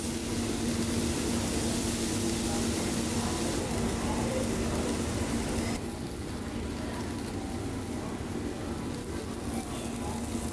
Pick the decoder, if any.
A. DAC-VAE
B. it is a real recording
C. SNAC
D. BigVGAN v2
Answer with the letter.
B